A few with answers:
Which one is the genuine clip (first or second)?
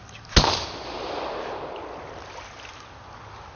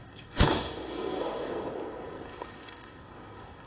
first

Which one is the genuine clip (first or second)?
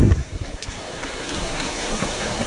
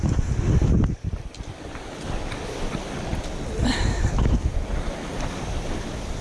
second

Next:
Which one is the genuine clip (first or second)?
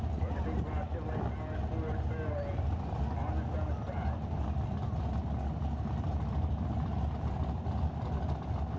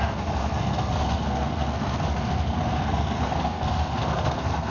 first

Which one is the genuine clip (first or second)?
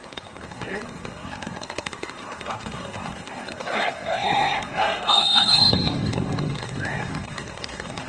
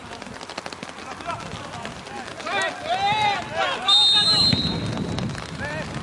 second